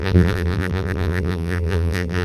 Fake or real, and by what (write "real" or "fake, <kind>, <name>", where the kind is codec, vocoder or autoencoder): fake, vocoder, BigVGAN v2